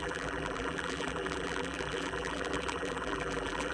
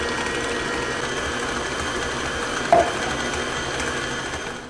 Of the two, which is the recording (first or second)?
second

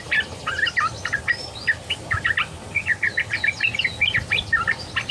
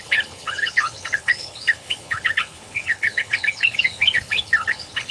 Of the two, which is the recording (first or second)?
first